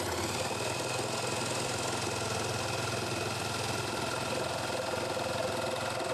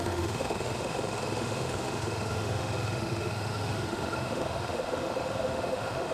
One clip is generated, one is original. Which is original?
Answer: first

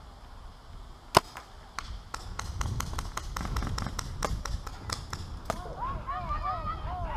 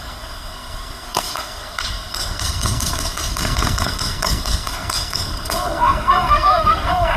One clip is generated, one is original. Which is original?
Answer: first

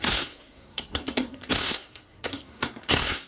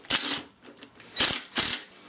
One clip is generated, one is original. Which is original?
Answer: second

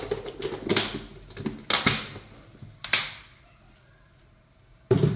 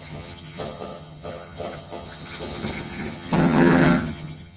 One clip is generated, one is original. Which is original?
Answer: first